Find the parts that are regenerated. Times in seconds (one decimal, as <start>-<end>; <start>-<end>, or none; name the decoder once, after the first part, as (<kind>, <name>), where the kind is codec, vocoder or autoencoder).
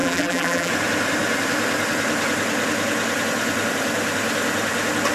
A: 0.0-0.7 (vocoder, BigVGAN v2)